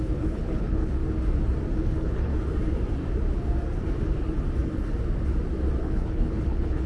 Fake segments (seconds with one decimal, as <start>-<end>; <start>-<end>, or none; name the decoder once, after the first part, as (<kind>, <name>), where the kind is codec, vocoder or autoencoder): 0.0-1.0 (codec, HILCodec); 1.8-2.3; 5.8-6.9